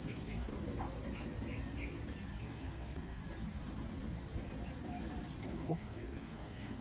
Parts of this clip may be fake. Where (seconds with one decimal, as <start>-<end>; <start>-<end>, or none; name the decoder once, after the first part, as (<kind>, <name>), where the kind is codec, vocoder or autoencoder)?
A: 0.0-0.5 (codec, SNAC); 2.4-3.2; 5.4-6.8